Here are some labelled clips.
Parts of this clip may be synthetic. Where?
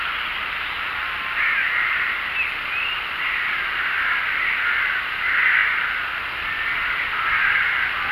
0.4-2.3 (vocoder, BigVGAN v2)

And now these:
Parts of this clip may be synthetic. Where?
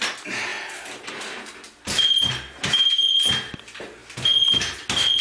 0.5-3.6 (vocoder, BigVGAN v2); 4.0-4.5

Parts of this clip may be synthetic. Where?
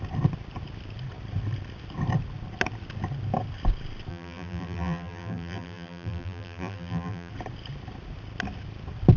4.1-7.3 (vocoder, BigVGAN v2)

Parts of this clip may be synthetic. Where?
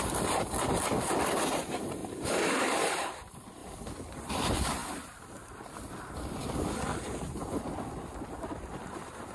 0.0-4.8 (vocoder, BigVGAN v2); 8.4-9.3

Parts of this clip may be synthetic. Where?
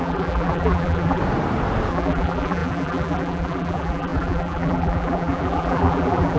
0.0-1.2 (vocoder, BigVGAN v2); 1.9-6.4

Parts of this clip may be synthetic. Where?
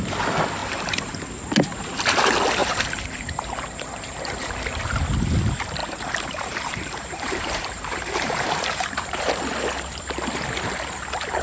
0.6-1.2 (vocoder, BigVGAN v2); 2.6-4.8; 5.8-9.2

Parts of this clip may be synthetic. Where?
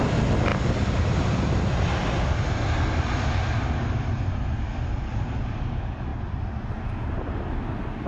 none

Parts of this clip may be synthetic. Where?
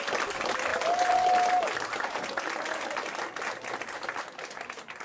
none